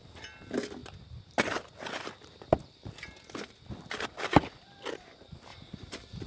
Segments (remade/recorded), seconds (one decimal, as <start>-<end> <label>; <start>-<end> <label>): 0.0-5.5 recorded; 5.5-6.3 remade